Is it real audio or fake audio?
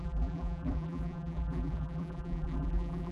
fake